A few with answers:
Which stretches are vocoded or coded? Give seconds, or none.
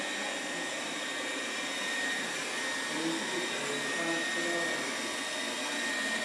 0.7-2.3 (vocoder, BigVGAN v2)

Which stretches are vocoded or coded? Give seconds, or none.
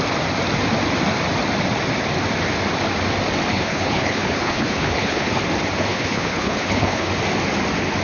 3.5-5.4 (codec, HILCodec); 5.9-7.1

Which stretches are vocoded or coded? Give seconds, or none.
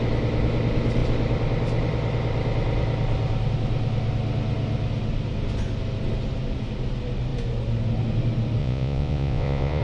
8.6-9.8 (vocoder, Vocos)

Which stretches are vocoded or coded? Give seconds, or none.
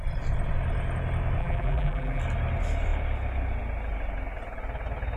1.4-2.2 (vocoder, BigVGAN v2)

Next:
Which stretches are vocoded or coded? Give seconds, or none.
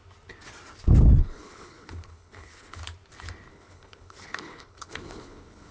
1.2-2.8 (codec, HILCodec); 3.5-5.7